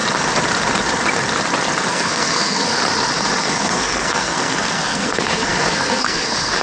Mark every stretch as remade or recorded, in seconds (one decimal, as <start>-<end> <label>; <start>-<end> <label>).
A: 0.0-1.9 recorded; 1.9-2.7 remade; 2.7-3.4 recorded; 3.4-6.6 remade